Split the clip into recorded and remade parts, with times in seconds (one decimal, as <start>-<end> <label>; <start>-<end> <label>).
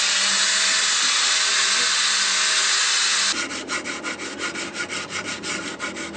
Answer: 0.0-6.2 recorded